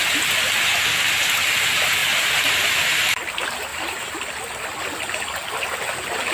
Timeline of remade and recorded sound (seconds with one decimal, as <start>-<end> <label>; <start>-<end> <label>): 0.0-6.3 recorded